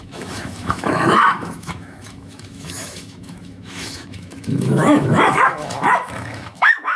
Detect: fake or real fake